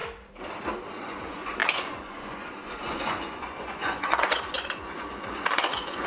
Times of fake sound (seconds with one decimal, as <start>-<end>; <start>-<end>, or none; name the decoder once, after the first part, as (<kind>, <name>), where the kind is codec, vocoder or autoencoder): 0.9-6.1 (vocoder, Vocos)